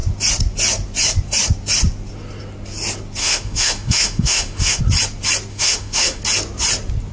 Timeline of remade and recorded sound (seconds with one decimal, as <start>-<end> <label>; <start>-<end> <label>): 0.0-3.2 recorded; 3.2-4.8 remade; 4.8-5.5 recorded; 5.5-6.2 remade; 6.2-7.1 recorded